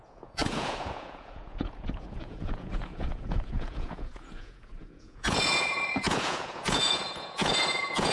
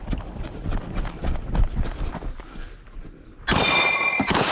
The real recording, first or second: second